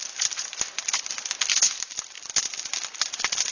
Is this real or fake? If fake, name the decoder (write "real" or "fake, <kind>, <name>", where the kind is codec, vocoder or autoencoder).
real